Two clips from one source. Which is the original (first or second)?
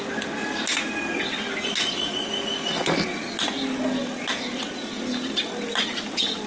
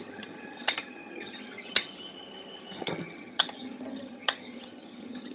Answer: first